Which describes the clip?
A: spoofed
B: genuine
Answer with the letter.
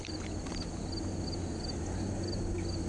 B